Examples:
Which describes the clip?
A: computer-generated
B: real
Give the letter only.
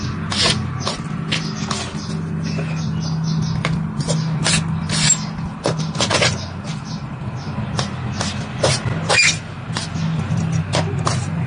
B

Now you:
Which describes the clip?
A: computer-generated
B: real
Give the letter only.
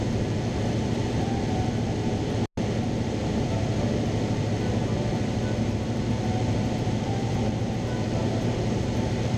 B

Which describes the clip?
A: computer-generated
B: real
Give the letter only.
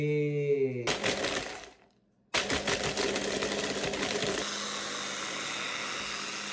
B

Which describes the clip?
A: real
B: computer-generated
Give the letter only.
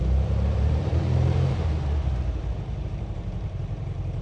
B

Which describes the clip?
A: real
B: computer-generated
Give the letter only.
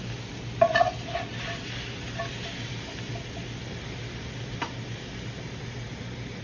A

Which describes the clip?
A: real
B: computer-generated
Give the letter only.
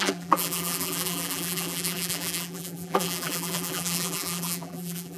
B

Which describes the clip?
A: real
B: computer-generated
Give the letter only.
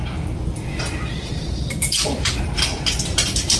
B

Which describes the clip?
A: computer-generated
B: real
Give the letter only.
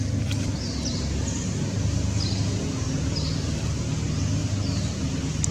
B